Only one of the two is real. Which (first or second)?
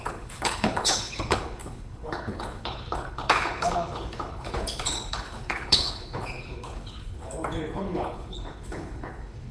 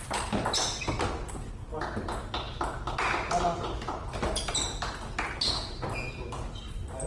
second